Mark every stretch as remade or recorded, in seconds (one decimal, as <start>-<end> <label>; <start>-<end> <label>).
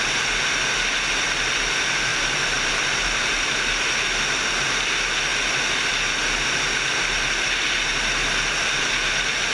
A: 0.0-2.1 recorded; 2.1-3.5 remade; 3.5-9.5 recorded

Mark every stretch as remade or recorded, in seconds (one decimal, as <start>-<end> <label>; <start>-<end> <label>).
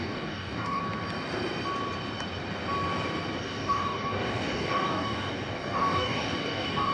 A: 0.0-0.8 remade; 0.8-3.4 recorded; 3.4-6.9 remade